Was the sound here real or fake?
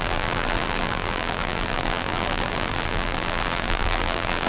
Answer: fake